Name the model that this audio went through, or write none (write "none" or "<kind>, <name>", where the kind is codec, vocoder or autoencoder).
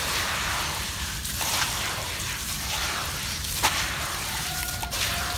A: vocoder, BigVGAN v2